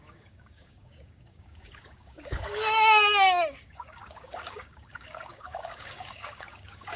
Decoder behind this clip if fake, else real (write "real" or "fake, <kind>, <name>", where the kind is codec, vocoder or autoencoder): fake, codec, DAC